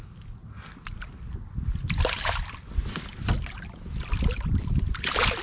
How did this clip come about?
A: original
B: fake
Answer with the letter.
A